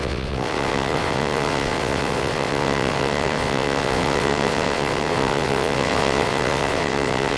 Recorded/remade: remade